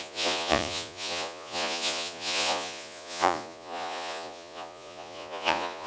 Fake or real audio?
fake